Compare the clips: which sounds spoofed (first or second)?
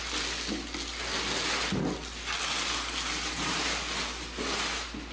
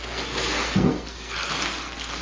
second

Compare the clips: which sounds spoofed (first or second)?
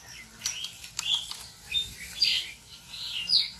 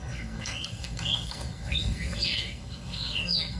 second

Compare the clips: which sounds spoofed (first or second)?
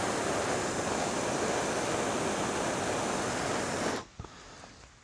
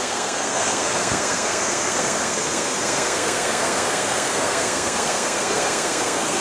second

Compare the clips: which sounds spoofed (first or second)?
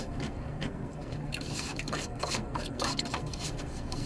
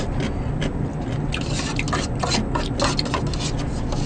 first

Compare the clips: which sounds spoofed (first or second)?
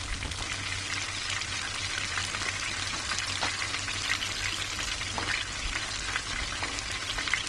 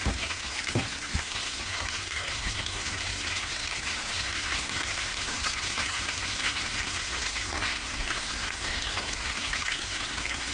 second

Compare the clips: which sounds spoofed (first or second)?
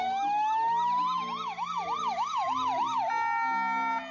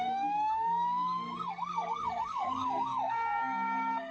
second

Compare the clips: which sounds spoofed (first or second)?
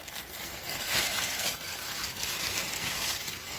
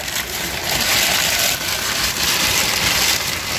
first